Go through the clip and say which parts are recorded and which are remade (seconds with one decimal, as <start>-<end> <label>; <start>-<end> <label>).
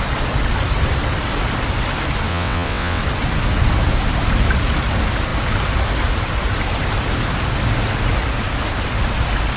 0.0-2.3 recorded; 2.3-3.0 remade; 3.0-9.6 recorded